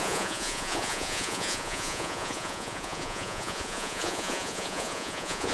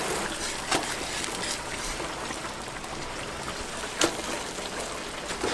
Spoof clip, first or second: first